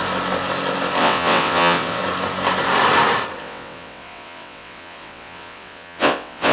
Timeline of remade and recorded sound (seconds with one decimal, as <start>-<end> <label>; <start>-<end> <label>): 0.0-1.0 recorded; 1.0-2.0 remade; 2.0-3.4 recorded; 3.4-6.5 remade